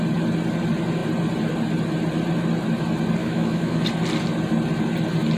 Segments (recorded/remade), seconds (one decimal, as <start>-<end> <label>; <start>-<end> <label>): 0.0-3.2 recorded; 3.2-3.8 remade; 3.8-5.4 recorded